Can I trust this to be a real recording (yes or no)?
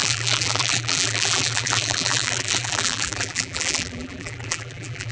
no